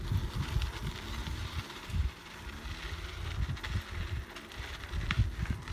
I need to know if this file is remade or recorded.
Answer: recorded